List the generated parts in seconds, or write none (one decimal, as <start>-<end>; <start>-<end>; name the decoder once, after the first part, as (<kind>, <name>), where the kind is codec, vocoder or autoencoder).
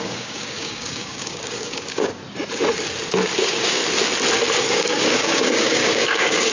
0.0-2.2 (codec, DAC); 3.4-3.8; 4.6-6.5